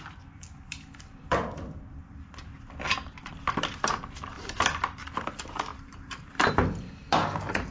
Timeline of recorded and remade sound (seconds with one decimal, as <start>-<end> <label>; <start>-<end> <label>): 0.0-7.7 remade